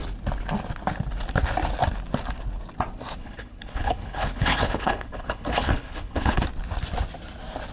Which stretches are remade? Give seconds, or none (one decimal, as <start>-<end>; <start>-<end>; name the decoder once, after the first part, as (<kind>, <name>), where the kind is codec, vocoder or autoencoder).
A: 3.2-6.4 (codec, HILCodec)